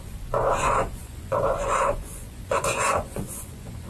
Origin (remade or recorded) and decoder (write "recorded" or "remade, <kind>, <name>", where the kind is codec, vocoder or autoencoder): remade, vocoder, Vocos